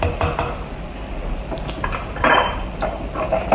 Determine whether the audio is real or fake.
real